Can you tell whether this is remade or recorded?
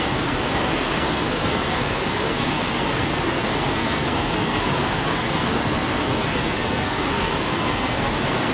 remade